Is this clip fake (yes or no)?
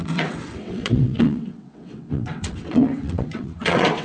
yes